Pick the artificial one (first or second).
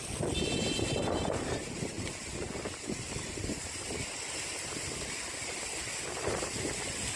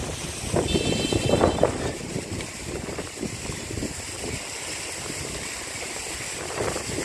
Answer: second